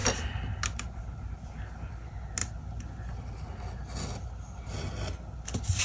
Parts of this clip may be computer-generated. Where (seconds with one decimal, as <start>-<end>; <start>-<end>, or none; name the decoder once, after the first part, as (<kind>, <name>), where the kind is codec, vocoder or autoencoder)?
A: none